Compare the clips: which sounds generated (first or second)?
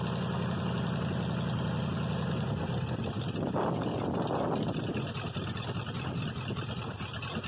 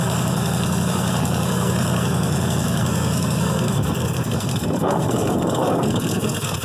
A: second